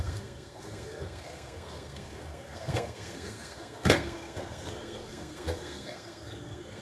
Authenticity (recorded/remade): remade